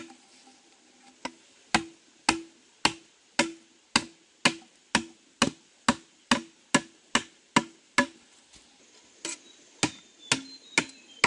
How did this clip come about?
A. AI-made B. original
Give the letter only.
B